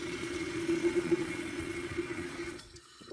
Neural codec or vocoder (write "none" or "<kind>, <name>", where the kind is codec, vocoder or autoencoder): vocoder, Vocos